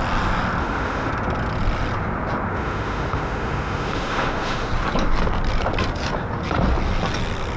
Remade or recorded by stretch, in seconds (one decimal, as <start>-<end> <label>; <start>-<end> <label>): 0.0-0.6 recorded; 0.6-1.1 remade; 1.1-2.5 recorded; 2.5-4.7 remade; 4.7-7.6 recorded